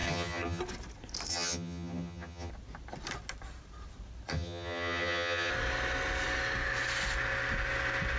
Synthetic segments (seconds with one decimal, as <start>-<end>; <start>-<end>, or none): 0.0-0.6; 1.3-2.5; 4.3-5.5